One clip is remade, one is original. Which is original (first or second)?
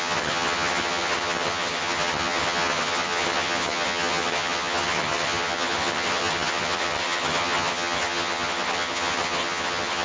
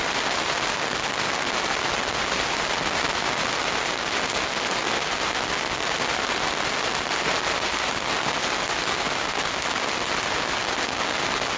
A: second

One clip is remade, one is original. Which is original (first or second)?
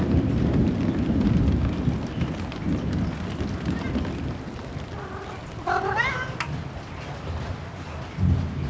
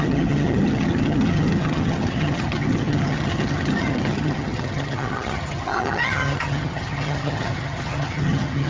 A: first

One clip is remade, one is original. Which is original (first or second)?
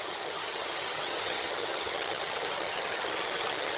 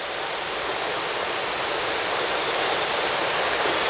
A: second